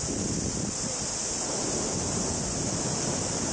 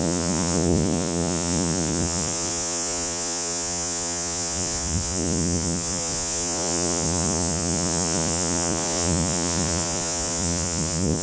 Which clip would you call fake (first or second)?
second